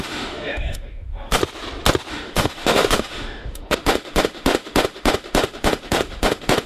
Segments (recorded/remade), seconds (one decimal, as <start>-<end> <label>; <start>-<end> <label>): 0.0-1.4 remade; 1.4-2.1 recorded; 2.1-6.7 remade